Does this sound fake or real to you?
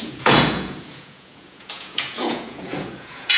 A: fake